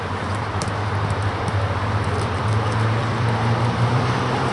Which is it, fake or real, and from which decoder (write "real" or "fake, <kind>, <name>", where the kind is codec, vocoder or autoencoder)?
fake, vocoder, BigVGAN v2